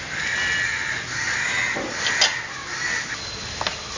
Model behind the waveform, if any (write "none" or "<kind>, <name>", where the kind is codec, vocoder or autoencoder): none